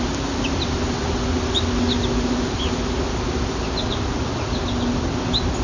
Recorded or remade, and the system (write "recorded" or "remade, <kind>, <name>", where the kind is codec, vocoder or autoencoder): recorded